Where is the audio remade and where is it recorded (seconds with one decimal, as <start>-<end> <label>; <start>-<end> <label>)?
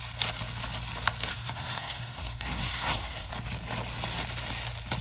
0.0-1.3 recorded; 1.3-3.3 remade; 3.3-5.0 recorded